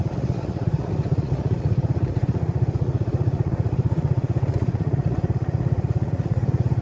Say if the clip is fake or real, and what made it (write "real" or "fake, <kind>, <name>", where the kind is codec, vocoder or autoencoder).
fake, vocoder, Vocos